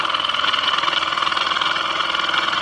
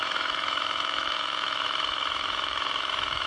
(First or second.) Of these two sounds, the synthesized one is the second